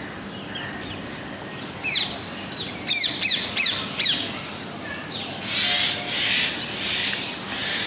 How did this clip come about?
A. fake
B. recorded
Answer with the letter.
B